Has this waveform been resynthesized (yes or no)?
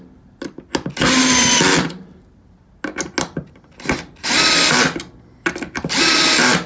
no